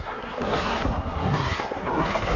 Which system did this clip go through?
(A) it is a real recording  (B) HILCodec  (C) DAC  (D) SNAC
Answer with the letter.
D